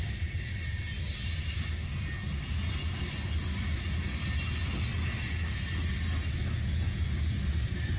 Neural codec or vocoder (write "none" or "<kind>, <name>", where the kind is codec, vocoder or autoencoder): none